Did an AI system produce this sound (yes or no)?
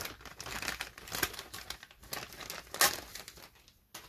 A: no